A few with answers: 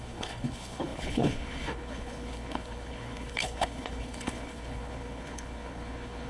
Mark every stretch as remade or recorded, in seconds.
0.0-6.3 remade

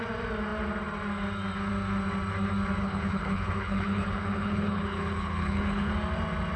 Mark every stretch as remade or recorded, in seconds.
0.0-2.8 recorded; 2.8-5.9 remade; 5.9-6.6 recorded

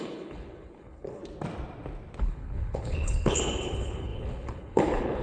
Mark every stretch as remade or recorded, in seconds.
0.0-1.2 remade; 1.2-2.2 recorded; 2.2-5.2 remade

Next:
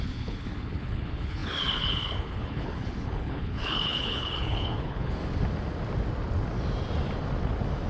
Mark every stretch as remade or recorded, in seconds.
0.0-5.2 remade; 5.2-7.9 recorded